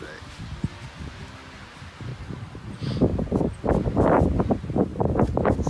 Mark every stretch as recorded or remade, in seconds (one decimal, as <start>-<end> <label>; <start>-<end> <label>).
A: 0.0-2.1 recorded; 2.1-2.7 remade; 2.7-3.1 recorded; 3.1-3.6 remade; 3.6-4.9 recorded; 4.9-5.7 remade